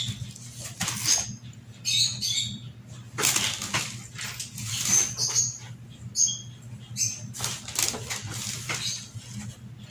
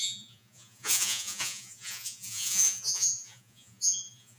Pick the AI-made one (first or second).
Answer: second